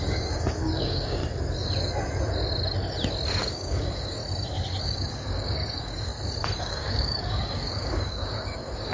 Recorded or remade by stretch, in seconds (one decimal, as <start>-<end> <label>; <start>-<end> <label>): 0.0-1.2 remade; 1.2-3.4 recorded; 3.4-4.2 remade; 4.2-4.8 recorded; 4.8-6.1 remade; 6.1-6.6 recorded; 6.6-8.9 remade